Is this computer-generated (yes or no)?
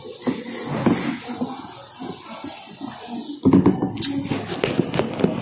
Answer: no